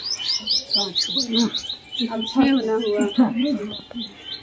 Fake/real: real